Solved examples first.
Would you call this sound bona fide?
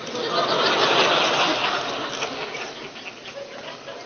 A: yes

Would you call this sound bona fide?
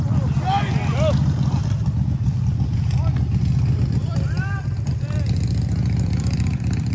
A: no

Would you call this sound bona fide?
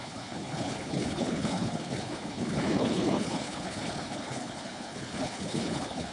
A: no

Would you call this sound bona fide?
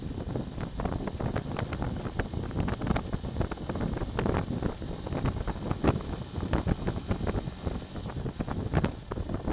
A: yes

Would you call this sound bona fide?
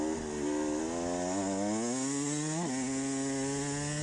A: yes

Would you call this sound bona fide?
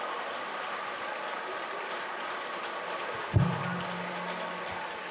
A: yes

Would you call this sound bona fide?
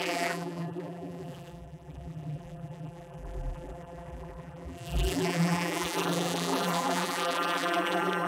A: no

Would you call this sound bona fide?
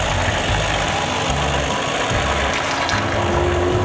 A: yes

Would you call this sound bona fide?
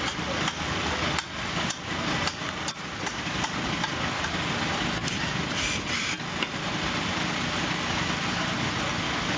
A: yes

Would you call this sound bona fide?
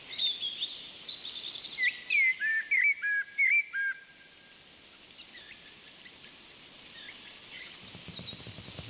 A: yes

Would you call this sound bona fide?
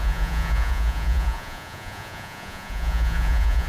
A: no